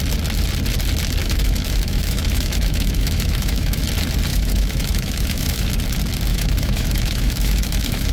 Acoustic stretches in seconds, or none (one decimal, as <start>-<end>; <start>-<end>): 0.0-1.2; 3.8-4.3; 5.7-6.3